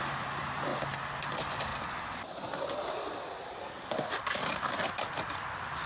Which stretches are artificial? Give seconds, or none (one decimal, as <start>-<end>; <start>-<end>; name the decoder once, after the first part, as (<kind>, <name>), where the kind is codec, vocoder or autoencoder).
0.0-0.7 (vocoder, BigVGAN v2); 1.2-5.9